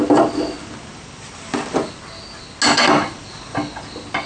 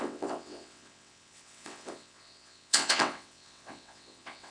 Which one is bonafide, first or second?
first